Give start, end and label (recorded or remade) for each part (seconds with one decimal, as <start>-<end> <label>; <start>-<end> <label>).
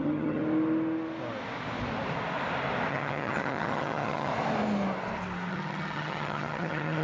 0.0-0.4 remade; 0.4-2.9 recorded; 2.9-4.3 remade; 4.3-5.5 recorded; 5.5-7.0 remade